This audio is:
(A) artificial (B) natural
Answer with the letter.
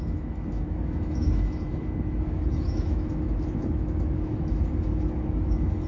A